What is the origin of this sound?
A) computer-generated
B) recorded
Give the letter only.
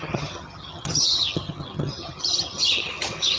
A